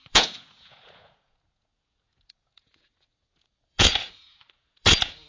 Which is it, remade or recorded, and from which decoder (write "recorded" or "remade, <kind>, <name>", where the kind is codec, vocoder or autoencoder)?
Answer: remade, vocoder, Vocos